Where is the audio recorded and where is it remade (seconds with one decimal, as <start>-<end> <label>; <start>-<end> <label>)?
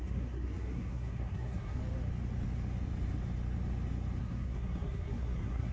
0.0-1.8 remade; 1.8-4.2 recorded; 4.2-5.7 remade